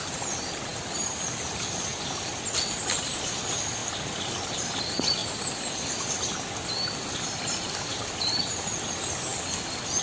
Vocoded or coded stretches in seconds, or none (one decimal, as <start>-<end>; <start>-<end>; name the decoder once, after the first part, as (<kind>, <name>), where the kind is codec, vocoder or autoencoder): 0.7-2.3 (vocoder, BigVGAN v2)